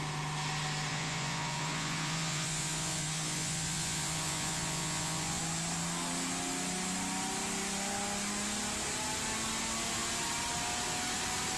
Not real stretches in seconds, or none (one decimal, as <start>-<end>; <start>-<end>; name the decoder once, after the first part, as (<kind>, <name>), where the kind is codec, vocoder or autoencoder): 0.9-5.4 (vocoder, Vocos)